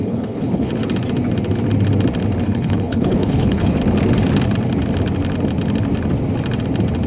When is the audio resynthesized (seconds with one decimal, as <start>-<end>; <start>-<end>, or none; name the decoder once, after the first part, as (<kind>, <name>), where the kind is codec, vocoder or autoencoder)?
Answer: 0.0-0.7 (codec, HILCodec); 2.4-3.8

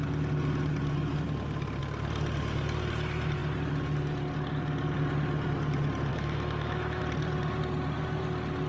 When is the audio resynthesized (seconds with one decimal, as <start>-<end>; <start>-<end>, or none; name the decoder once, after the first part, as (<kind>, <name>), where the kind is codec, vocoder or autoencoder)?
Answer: 6.1-7.0 (autoencoder, DAC-VAE)

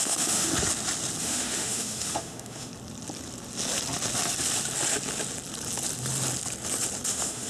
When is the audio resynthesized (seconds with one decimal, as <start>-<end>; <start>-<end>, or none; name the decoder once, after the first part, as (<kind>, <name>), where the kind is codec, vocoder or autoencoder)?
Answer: 0.0-0.5 (autoencoder, DAC-VAE); 1.2-2.7; 7.1-7.5

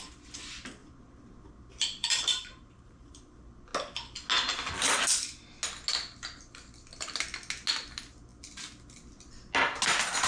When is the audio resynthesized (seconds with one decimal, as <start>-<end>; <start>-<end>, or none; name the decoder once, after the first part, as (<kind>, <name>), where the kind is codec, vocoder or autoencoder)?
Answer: 0.8-1.5 (vocoder, BigVGAN v2); 2.0-3.2

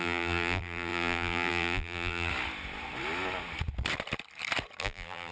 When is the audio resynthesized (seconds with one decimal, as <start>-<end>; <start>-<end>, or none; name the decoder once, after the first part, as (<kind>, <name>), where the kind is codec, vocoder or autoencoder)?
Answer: 0.0-2.3 (vocoder, BigVGAN v2); 4.8-5.3

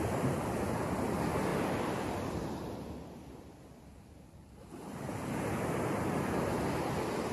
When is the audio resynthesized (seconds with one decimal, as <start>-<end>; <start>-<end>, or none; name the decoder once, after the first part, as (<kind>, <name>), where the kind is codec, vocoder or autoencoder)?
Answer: none

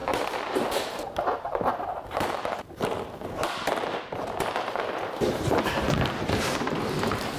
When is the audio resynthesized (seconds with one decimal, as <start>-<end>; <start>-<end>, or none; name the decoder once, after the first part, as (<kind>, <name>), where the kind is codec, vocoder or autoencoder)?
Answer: 0.0-7.4 (vocoder, BigVGAN v2)